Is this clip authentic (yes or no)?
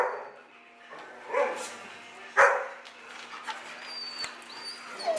yes